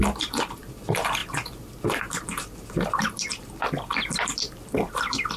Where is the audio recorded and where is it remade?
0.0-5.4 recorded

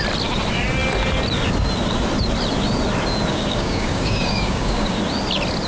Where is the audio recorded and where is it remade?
0.0-3.3 recorded; 3.3-5.0 remade; 5.0-5.7 recorded

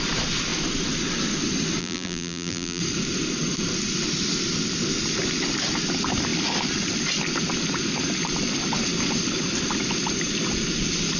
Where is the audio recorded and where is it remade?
0.0-1.8 recorded; 1.8-2.8 remade; 2.8-11.2 recorded

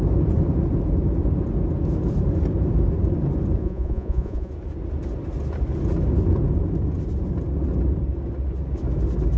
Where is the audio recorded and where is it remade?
0.0-3.6 recorded; 3.6-4.5 remade; 4.5-9.4 recorded